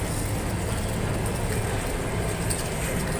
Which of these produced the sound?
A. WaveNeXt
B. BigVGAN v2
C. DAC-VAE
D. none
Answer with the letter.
D